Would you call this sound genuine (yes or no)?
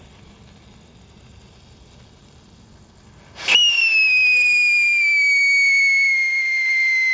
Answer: yes